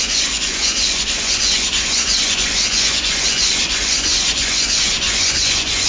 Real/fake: fake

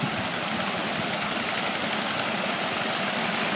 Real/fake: real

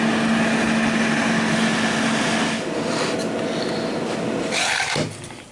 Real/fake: real